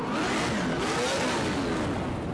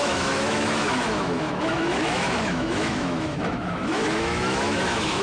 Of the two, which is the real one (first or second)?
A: first